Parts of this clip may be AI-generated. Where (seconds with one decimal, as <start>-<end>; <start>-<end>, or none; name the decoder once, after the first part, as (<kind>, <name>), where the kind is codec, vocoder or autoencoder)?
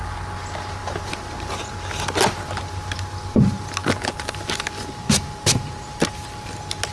none